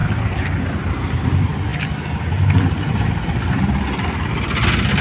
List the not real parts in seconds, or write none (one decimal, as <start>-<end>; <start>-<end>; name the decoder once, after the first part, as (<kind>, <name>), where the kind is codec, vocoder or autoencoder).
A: none

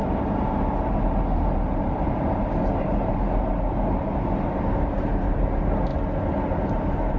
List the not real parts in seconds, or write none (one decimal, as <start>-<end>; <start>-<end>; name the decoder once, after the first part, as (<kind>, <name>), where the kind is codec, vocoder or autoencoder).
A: 0.0-5.9 (vocoder, BigVGAN v2); 6.5-7.2